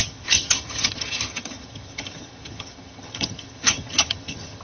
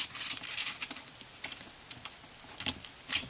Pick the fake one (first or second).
first